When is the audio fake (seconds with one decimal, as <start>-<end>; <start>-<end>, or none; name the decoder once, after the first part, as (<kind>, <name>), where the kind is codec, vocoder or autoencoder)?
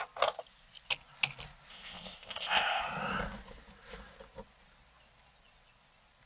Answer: 1.7-2.8 (codec, ZipCodec)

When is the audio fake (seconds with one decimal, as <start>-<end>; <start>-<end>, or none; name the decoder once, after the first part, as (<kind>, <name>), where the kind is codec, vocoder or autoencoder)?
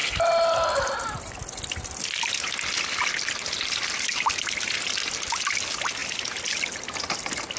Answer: none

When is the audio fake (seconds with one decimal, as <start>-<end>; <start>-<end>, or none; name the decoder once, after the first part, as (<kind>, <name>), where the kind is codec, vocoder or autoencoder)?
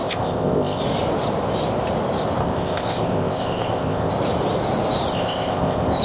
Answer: 0.0-0.8 (codec, ZipCodec); 2.4-4.1; 5.1-6.0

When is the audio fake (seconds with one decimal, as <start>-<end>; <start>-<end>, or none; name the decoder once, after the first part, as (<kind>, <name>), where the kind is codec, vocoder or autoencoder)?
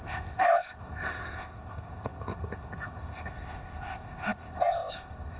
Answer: 0.0-5.4 (codec, ZipCodec)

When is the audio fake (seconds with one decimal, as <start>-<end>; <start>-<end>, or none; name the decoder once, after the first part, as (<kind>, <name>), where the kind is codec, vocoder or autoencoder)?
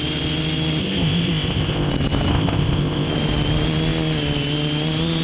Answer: 0.8-1.9 (codec, ZipCodec); 2.3-3.1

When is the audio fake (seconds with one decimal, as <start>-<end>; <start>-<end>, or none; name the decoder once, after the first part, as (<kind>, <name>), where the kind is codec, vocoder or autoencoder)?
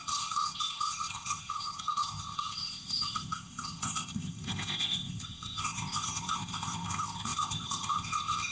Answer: 0.0-8.5 (codec, ZipCodec)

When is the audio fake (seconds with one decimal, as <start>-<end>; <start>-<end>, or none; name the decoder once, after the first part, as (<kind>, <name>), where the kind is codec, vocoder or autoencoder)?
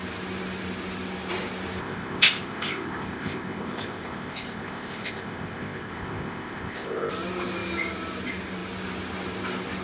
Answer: 1.8-7.1 (codec, ZipCodec)